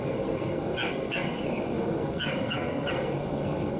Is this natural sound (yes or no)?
no